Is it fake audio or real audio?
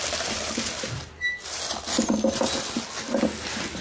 real